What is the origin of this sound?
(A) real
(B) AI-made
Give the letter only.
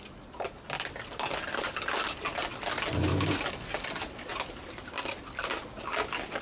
A